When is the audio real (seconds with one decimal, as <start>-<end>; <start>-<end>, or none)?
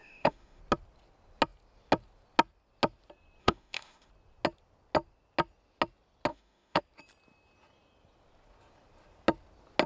0.6-3.4; 4.1-6.3; 6.8-9.9